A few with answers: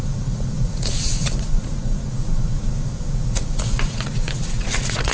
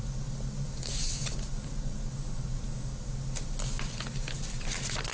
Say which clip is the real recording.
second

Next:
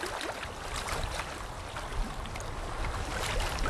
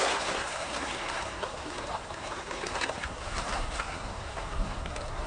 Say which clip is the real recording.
first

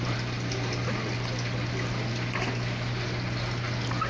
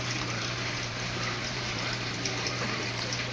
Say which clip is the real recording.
first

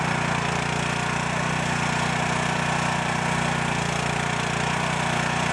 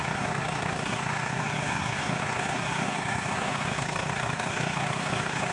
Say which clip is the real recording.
first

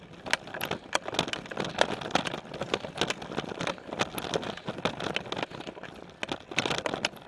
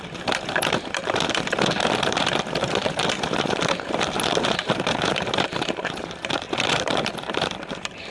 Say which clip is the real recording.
first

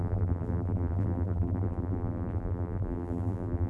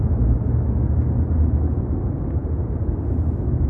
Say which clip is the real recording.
second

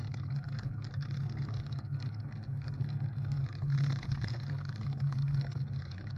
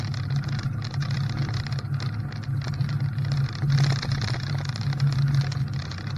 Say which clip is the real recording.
second